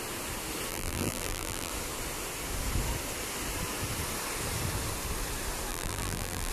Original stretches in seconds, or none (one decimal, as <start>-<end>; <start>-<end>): 0.0-0.7; 1.7-5.7